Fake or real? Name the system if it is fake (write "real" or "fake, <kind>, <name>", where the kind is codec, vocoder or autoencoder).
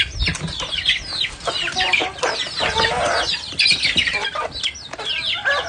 real